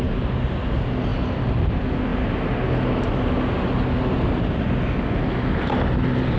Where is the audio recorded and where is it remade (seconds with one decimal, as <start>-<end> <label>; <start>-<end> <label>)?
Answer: 0.0-1.1 recorded; 1.1-1.7 remade; 1.7-6.4 recorded

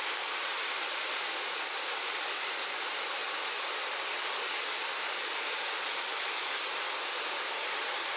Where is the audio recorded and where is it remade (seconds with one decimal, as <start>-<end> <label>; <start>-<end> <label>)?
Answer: 0.0-0.5 recorded; 0.5-5.4 remade; 5.4-8.2 recorded

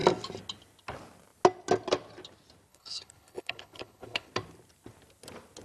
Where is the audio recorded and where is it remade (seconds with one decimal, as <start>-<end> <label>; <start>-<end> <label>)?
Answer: 0.0-2.7 recorded; 2.7-4.3 remade; 4.3-5.6 recorded